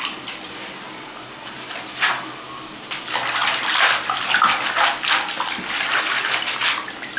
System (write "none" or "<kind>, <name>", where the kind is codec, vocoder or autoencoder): none